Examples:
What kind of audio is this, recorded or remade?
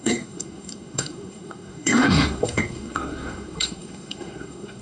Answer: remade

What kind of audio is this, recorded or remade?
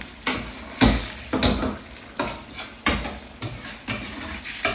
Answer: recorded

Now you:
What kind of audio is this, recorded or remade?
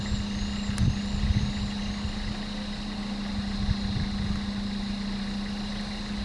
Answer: recorded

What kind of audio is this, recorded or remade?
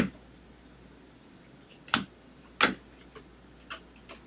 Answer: recorded